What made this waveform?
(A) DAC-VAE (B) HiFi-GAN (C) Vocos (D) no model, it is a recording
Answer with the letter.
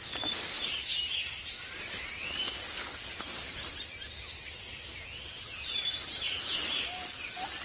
D